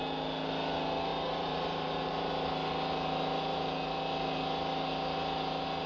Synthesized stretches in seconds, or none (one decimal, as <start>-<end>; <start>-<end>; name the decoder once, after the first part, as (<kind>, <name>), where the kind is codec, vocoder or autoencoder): 1.1-2.3 (vocoder, BigVGAN v2)